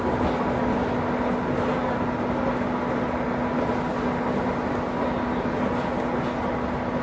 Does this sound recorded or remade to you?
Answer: recorded